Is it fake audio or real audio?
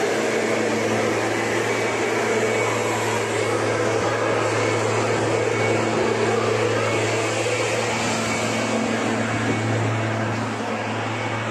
real